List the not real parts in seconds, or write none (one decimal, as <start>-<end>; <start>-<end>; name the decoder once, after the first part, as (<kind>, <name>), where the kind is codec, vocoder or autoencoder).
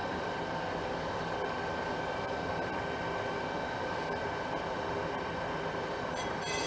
none